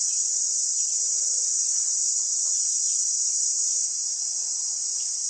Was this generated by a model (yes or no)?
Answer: yes